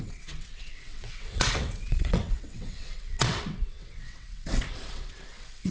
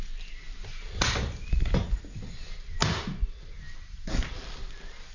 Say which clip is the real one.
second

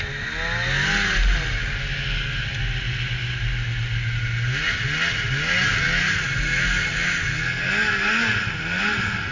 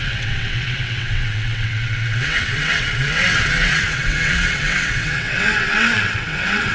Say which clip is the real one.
first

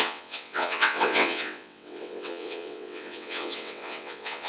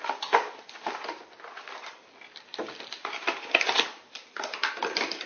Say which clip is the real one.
second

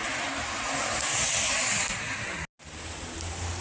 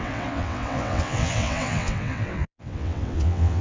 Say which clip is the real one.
first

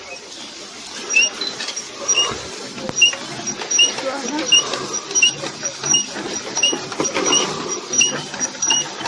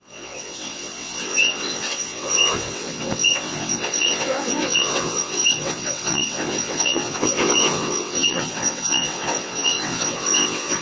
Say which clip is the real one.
first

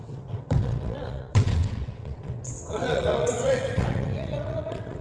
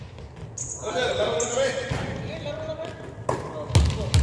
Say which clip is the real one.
second